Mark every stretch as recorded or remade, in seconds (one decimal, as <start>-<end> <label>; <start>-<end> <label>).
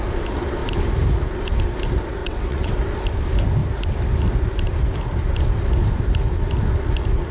0.0-2.2 recorded; 2.2-2.7 remade; 2.7-7.3 recorded